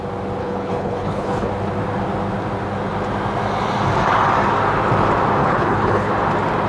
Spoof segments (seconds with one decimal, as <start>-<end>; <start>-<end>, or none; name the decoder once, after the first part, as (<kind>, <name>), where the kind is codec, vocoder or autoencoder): 0.4-1.5 (codec, HILCodec); 5.4-6.1